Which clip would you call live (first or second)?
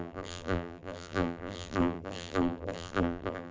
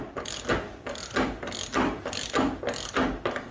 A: second